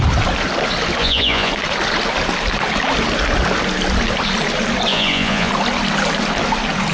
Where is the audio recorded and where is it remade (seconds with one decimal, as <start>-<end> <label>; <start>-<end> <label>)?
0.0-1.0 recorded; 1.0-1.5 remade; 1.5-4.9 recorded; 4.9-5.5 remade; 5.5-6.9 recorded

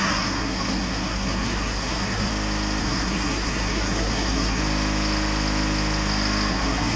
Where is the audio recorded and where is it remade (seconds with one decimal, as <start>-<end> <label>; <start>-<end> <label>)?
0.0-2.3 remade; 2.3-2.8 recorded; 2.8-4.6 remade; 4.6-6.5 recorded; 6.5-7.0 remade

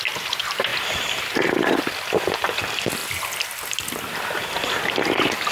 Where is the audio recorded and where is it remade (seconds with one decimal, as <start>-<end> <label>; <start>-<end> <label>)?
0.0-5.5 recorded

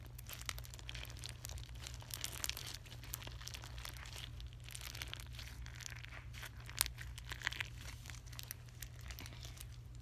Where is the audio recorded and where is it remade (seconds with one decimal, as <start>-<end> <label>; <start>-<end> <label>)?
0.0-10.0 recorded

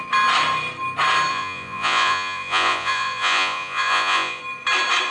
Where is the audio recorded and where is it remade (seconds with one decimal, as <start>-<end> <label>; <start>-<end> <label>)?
0.0-1.3 recorded; 1.3-4.4 remade; 4.4-5.1 recorded

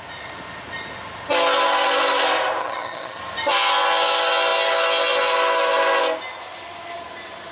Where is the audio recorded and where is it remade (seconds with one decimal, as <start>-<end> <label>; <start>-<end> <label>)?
0.0-2.6 recorded; 2.6-3.2 remade; 3.2-7.5 recorded

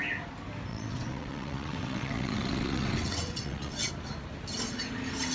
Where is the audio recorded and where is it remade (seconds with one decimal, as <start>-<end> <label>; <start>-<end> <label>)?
0.0-0.7 recorded; 0.7-3.9 remade; 3.9-5.3 recorded